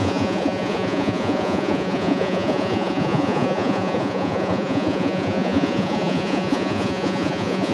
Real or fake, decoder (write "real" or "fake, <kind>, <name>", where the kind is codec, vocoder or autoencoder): fake, vocoder, Vocos